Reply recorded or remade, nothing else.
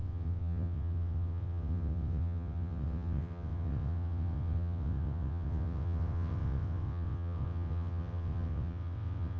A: remade